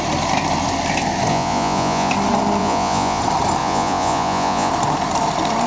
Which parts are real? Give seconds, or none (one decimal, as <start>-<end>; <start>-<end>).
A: 0.0-1.3; 2.1-2.6; 3.2-3.6; 4.7-5.7